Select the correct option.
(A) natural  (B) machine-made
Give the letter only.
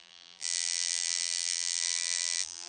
B